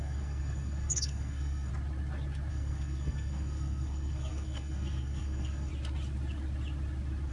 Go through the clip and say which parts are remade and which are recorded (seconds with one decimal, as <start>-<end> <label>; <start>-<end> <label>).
0.0-1.7 remade; 1.7-2.5 recorded; 2.5-5.7 remade; 5.7-7.3 recorded